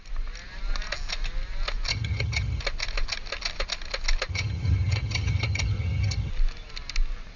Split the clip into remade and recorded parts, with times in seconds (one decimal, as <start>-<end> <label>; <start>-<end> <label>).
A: 0.0-1.9 recorded; 1.9-2.6 remade; 2.6-4.3 recorded; 4.3-6.3 remade; 6.3-7.4 recorded